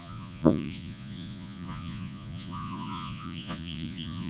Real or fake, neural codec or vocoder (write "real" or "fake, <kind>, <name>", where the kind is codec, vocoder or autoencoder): fake, vocoder, Vocos